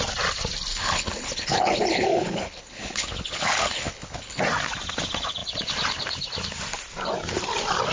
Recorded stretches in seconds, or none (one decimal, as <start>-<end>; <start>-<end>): 0.0-0.7; 4.4-7.9